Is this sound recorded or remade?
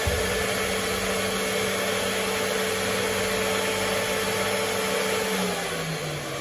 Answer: recorded